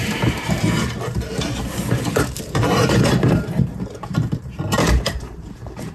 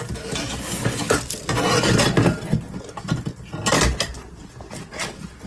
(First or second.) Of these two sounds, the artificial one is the first